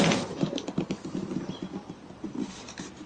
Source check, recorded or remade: recorded